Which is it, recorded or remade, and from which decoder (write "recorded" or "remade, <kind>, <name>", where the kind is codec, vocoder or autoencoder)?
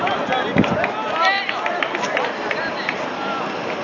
recorded